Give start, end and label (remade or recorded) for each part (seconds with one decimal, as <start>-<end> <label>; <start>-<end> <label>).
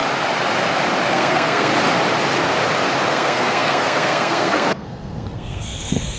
0.0-1.1 recorded; 1.1-1.7 remade; 1.7-3.1 recorded; 3.1-6.2 remade